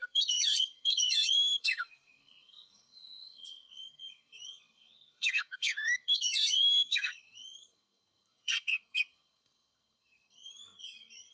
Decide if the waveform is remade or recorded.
remade